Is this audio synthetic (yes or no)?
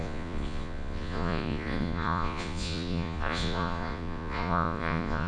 yes